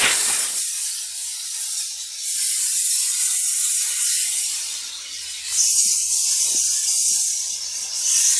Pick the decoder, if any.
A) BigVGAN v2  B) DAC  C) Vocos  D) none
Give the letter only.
D